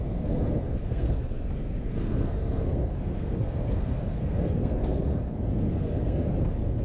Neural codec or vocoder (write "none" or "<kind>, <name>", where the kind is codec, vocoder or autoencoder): codec, SNAC